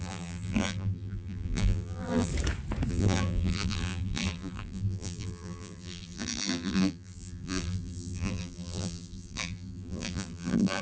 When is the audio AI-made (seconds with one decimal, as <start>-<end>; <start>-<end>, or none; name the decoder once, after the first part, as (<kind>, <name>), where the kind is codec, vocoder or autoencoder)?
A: 0.0-2.3 (vocoder, BigVGAN v2); 2.9-10.8

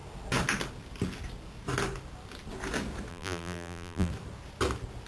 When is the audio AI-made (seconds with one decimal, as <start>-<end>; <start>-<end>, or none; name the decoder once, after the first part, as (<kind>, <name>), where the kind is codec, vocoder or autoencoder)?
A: 3.1-4.1 (vocoder, BigVGAN v2)

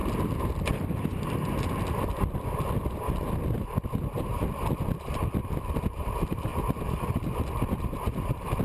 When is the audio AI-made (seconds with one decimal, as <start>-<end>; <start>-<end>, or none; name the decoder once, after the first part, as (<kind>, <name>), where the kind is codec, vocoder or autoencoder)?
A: 0.0-6.5 (vocoder, BigVGAN v2); 7.8-8.6

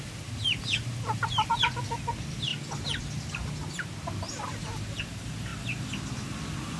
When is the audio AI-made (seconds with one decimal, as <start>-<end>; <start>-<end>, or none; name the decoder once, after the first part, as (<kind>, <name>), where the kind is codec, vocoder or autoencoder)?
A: 0.0-1.5 (vocoder, BigVGAN v2); 2.1-2.5; 4.0-5.5; 6.1-6.8